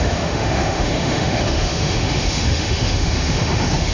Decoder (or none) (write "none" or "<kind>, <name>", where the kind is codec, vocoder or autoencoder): autoencoder, DAC-VAE